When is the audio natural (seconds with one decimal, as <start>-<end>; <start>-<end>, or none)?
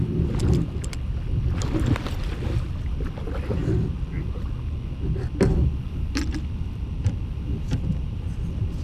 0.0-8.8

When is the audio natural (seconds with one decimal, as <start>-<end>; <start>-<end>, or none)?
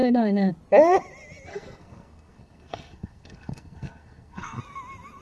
0.5-1.5; 4.6-5.2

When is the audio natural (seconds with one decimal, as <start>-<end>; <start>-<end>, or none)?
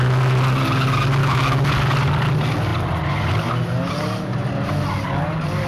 0.0-1.2; 1.7-5.7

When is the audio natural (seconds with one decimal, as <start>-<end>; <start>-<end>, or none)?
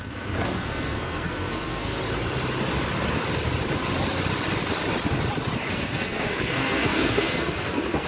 2.0-5.7